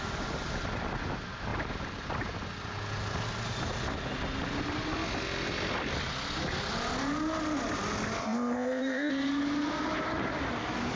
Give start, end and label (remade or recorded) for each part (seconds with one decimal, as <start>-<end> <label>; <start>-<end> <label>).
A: 0.0-8.2 recorded; 8.2-9.1 remade; 9.1-11.0 recorded